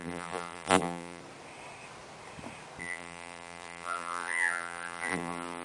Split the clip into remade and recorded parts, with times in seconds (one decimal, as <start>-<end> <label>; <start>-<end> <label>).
0.0-1.2 remade; 1.2-2.8 recorded; 2.8-5.6 remade